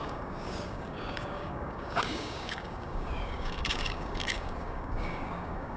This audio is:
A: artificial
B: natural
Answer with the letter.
A